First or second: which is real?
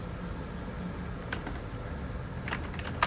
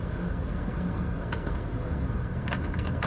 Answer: first